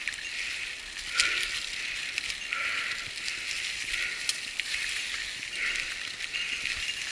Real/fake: real